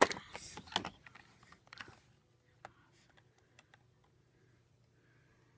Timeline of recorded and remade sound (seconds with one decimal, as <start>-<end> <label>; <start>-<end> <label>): 0.0-5.6 recorded